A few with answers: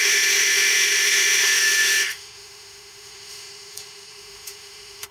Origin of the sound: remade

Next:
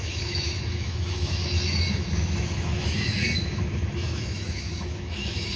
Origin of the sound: remade